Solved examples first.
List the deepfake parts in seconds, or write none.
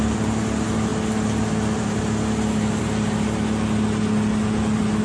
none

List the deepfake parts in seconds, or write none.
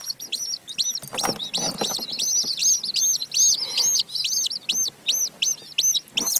none